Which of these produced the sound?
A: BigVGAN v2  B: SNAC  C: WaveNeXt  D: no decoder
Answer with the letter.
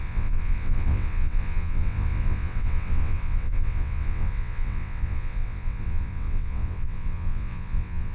C